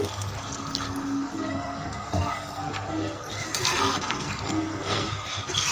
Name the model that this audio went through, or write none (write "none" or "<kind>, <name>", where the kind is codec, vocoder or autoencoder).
codec, SNAC